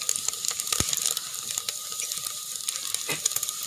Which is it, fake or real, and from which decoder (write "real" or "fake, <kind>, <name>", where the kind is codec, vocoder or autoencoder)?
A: real